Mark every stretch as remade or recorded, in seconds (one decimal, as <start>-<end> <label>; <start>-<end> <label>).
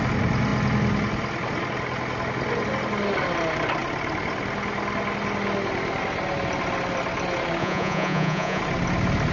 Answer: 0.0-7.6 recorded; 7.6-8.6 remade; 8.6-9.3 recorded